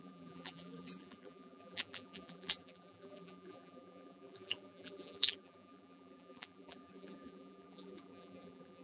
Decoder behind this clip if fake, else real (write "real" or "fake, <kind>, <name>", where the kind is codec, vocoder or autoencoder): fake, vocoder, BigVGAN v2